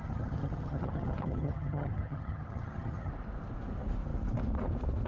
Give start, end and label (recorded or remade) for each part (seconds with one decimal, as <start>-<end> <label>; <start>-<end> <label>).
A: 0.0-3.1 remade; 3.1-5.1 recorded